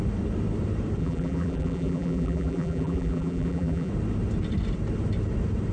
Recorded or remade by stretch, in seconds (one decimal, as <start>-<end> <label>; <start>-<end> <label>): 0.0-1.0 recorded; 1.0-3.9 remade; 3.9-5.7 recorded